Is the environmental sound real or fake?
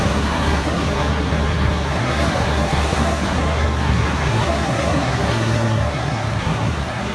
fake